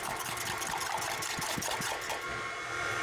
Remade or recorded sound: recorded